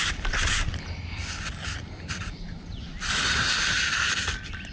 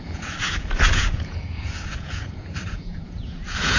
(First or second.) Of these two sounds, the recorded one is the first